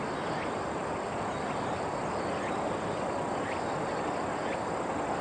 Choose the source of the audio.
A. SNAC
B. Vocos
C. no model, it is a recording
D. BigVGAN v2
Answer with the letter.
C